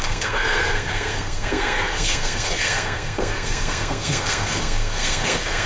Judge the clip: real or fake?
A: fake